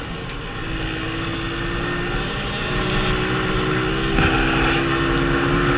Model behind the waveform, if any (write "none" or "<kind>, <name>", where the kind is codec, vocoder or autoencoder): none